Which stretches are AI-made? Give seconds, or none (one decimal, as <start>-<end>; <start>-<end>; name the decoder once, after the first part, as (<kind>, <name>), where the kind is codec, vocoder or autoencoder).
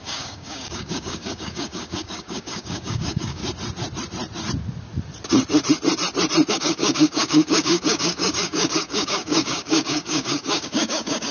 0.0-3.4 (codec, DAC); 6.5-11.3